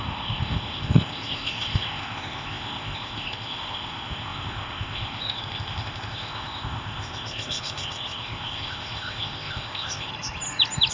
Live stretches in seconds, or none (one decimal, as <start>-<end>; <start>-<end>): 10.1-10.9